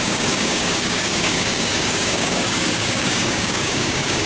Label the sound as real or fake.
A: fake